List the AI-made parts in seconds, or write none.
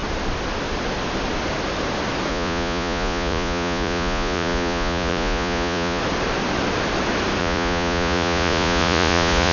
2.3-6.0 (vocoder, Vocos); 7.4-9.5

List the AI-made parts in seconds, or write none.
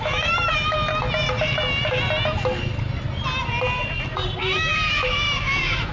0.0-0.9 (autoencoder, DAC-VAE); 4.4-5.9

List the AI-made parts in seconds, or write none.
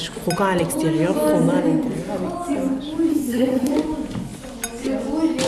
3.1-3.7 (codec, SNAC)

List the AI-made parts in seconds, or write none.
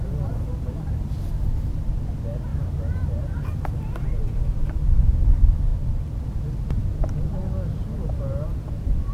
2.5-3.2 (vocoder, BigVGAN v2)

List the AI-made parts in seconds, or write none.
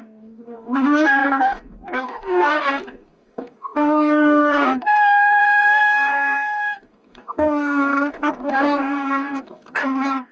0.0-10.3 (codec, DAC)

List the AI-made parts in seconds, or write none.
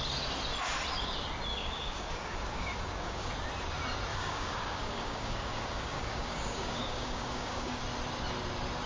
1.5-3.3 (codec, DAC); 4.1-7.8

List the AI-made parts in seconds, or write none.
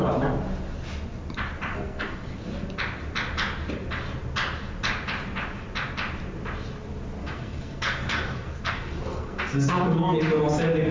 1.7-2.4 (codec, SNAC); 7.2-10.2